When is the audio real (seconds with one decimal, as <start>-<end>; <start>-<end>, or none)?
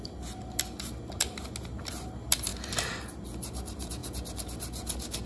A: 0.0-5.3